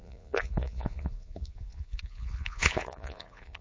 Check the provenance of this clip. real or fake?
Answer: fake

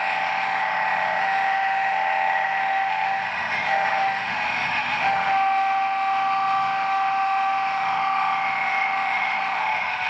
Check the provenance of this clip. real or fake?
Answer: fake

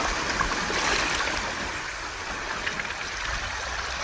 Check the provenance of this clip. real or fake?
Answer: real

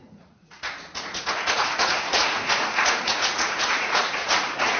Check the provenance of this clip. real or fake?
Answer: fake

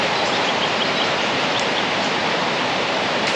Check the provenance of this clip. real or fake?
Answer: fake